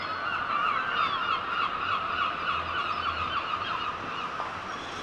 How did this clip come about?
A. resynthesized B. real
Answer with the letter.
B